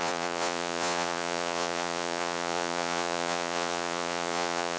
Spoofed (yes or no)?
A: yes